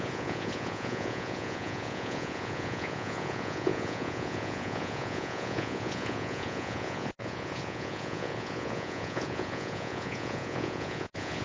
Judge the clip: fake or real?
fake